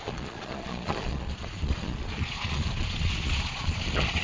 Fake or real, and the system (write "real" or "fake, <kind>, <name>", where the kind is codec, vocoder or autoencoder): fake, vocoder, Vocos